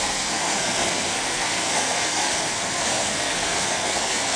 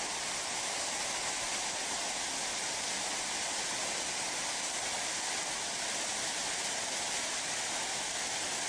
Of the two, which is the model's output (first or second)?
first